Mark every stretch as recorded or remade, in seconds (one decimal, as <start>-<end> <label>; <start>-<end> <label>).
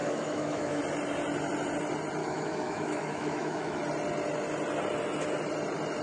0.0-0.8 remade; 0.8-2.2 recorded; 2.2-3.8 remade; 3.8-6.0 recorded